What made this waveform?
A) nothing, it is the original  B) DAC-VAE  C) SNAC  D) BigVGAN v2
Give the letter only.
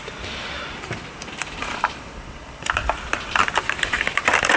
D